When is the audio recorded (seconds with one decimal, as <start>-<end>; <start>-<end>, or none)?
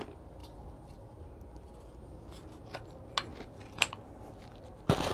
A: 0.0-5.1